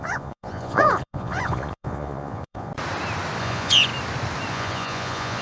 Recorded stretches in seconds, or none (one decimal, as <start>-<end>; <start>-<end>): 2.7-3.4; 3.9-4.5